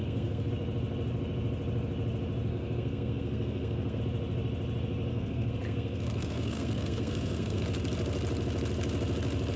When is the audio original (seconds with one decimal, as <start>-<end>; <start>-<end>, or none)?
0.5-2.5; 4.0-5.1; 7.6-9.6